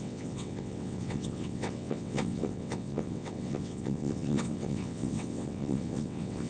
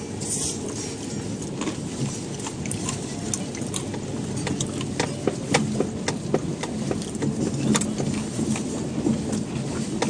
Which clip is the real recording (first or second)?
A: second